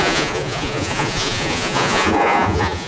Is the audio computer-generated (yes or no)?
yes